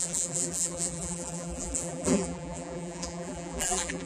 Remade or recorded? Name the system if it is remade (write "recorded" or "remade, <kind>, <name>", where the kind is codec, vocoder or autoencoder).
remade, vocoder, BigVGAN v2